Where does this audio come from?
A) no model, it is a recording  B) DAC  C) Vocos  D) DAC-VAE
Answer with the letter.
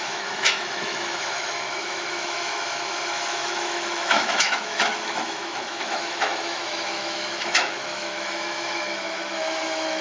D